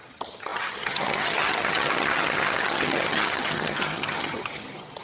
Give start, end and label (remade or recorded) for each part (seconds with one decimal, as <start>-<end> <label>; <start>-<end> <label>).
0.0-5.0 remade